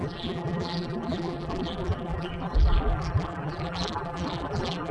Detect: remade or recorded remade